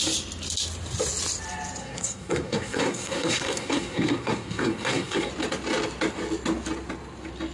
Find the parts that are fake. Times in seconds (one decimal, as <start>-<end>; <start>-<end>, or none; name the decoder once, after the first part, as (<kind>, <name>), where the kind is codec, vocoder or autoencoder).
1.8-5.3 (codec, SNAC)

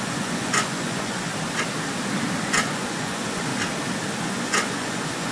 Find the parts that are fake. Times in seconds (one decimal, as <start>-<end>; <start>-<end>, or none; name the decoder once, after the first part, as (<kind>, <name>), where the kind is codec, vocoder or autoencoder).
0.0-1.3 (vocoder, Vocos); 2.4-3.5; 4.2-5.3

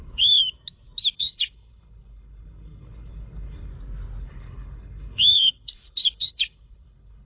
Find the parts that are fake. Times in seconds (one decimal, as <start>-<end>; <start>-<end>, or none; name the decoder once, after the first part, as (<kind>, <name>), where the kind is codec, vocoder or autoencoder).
0.0-0.4 (codec, HILCodec); 1.1-3.7; 4.2-7.2

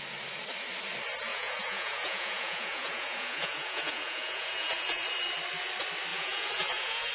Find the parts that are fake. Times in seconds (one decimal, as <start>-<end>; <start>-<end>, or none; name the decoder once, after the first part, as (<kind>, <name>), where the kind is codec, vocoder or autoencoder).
1.3-5.0 (vocoder, Vocos); 6.1-7.1

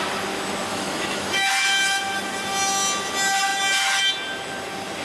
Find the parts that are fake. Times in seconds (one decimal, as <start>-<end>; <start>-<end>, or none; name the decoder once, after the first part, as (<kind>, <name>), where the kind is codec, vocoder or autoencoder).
0.7-1.5 (autoencoder, DAC-VAE)

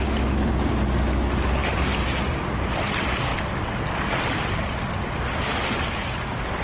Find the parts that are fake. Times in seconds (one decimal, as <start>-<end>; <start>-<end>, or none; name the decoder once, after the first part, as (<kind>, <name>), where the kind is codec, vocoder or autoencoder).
none

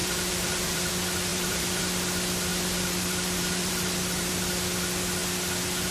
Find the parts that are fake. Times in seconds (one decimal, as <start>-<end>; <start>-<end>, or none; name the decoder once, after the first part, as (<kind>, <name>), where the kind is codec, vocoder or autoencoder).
0.0-0.9 (vocoder, BigVGAN v2); 1.3-1.8; 2.5-4.4